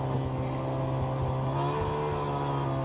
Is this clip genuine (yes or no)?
yes